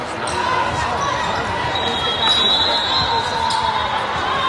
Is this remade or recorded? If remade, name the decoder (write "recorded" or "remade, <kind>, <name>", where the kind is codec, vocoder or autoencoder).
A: recorded